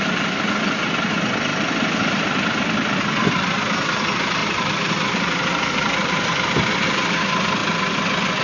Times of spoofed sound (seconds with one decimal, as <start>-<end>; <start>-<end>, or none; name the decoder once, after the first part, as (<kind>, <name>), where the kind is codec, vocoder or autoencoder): 1.5-3.6 (vocoder, BigVGAN v2); 4.4-6.3